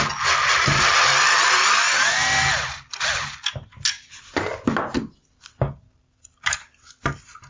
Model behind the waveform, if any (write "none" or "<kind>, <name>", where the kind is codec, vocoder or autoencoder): none